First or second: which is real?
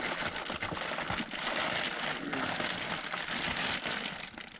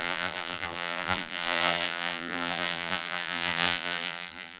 first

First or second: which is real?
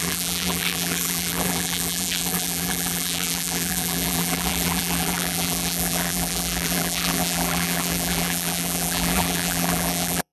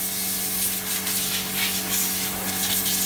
second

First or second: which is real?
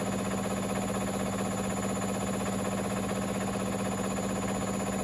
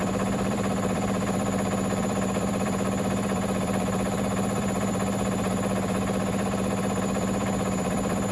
first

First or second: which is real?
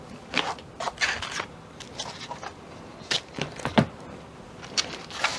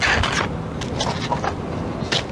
second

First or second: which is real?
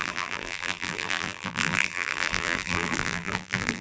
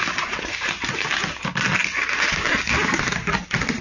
second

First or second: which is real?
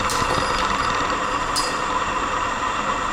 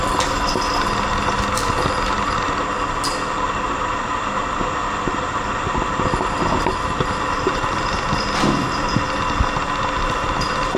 second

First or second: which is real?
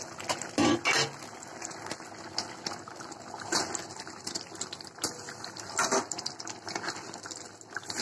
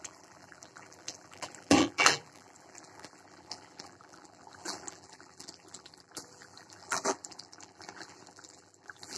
first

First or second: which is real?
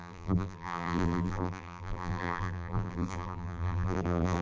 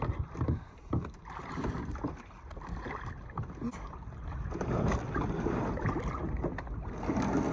second